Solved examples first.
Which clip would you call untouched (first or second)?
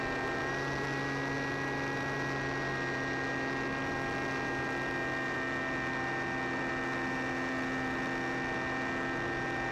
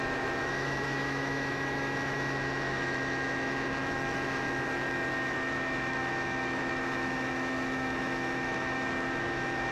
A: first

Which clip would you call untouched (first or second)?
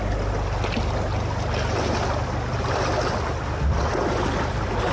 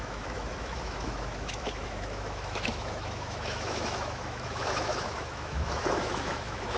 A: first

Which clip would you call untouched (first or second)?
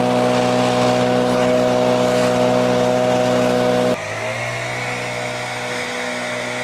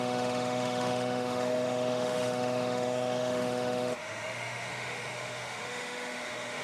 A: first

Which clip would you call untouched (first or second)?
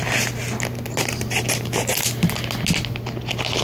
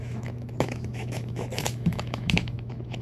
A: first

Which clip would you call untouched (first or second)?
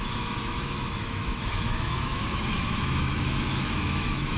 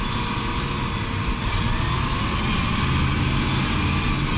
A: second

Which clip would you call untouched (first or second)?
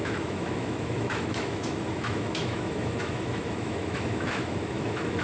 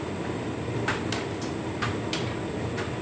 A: second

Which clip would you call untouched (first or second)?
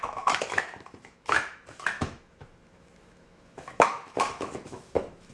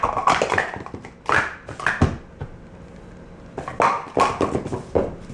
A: second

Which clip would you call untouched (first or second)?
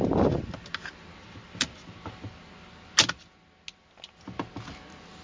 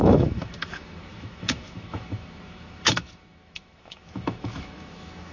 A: first